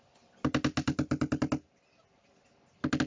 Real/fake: real